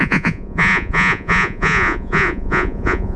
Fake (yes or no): yes